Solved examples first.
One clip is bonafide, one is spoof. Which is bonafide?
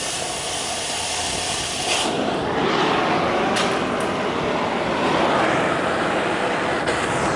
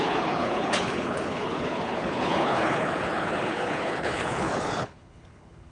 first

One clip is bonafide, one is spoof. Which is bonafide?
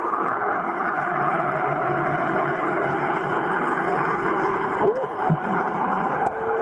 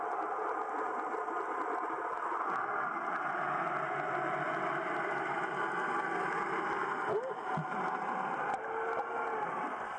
second